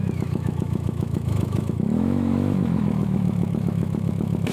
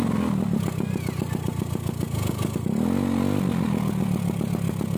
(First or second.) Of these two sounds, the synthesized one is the first